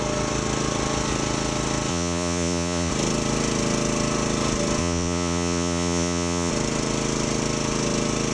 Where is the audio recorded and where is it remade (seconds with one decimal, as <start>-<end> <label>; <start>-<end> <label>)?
0.0-1.9 recorded; 1.9-2.9 remade; 2.9-4.8 recorded; 4.8-6.5 remade; 6.5-8.3 recorded